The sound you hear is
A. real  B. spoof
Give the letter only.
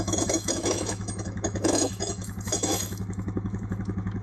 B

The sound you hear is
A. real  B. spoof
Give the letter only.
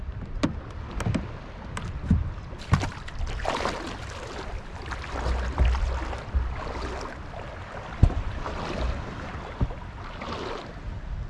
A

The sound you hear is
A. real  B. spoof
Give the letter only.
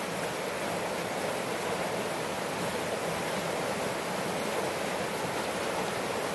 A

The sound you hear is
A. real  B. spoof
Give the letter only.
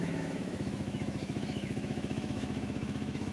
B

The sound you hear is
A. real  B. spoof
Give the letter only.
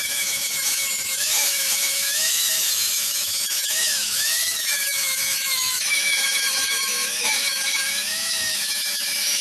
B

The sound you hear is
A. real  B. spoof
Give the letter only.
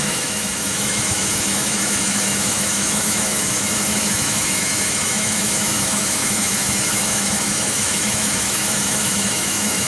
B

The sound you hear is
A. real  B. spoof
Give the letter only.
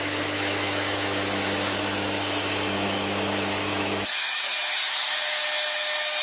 B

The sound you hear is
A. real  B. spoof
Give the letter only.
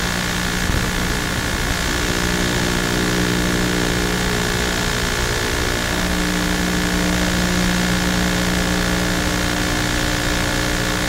A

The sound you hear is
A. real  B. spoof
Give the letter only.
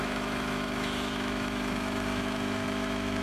B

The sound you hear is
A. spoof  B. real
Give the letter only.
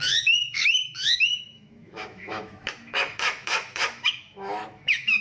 A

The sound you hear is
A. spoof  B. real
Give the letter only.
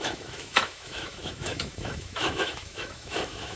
A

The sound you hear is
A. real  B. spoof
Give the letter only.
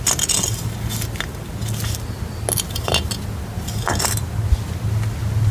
A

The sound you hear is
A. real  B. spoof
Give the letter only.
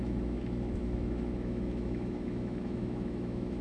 B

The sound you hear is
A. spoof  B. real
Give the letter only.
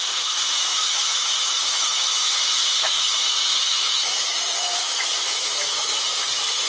A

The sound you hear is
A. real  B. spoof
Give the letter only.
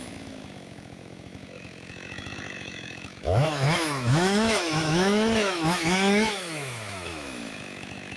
B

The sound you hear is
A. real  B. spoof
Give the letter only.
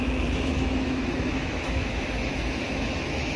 B